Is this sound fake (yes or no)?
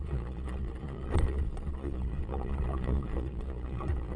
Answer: yes